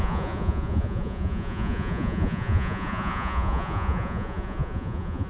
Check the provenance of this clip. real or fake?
fake